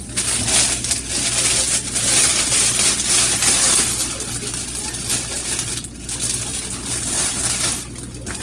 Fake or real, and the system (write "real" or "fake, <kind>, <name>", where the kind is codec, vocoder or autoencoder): real